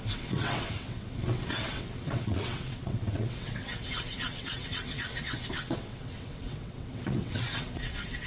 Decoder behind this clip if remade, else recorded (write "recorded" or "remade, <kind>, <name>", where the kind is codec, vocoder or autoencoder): remade, vocoder, WaveNeXt